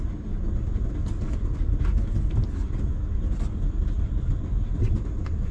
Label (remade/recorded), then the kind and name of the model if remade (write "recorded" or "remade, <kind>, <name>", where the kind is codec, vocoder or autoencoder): recorded